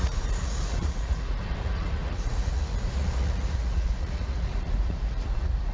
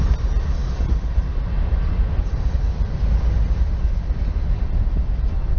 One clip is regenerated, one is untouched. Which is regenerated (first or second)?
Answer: first